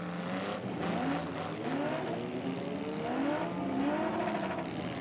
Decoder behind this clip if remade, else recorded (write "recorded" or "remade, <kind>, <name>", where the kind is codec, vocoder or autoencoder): recorded